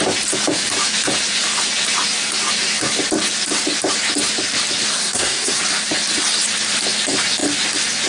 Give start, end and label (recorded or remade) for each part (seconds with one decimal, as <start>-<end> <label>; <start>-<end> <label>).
0.0-4.9 recorded; 4.9-5.6 remade; 5.6-8.1 recorded